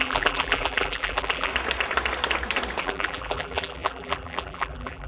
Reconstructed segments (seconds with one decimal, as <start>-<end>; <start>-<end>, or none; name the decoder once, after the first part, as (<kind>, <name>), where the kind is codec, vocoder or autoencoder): 0.0-1.5 (vocoder, BigVGAN v2); 2.8-5.1